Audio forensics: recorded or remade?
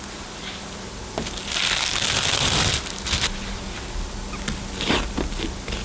recorded